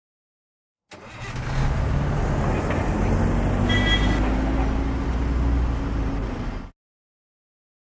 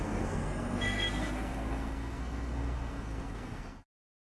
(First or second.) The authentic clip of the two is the first